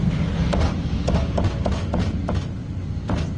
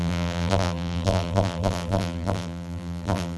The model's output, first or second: second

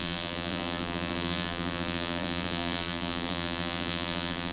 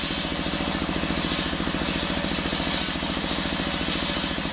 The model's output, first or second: first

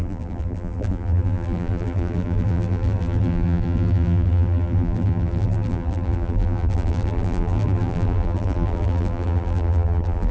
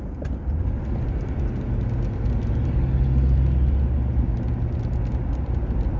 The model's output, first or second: first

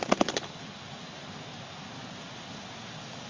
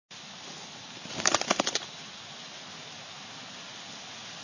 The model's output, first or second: second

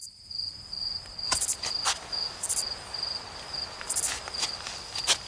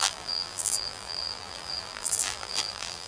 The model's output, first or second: second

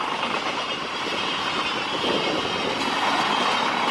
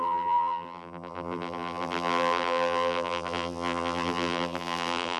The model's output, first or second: second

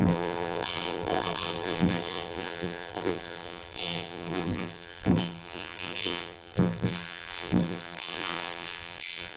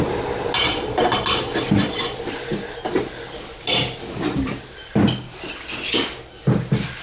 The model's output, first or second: first